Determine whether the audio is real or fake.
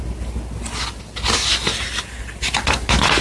real